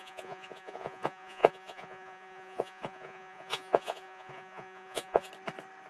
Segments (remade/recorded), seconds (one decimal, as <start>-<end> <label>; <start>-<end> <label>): 0.0-5.3 remade; 5.3-5.9 recorded